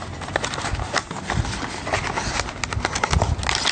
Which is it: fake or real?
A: real